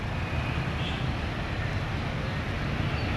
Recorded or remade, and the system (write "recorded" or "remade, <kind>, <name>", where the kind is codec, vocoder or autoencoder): recorded